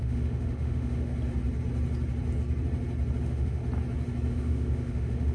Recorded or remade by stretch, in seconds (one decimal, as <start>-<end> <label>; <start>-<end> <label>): 0.0-1.1 remade; 1.1-3.2 recorded; 3.2-3.6 remade; 3.6-4.3 recorded; 4.3-5.3 remade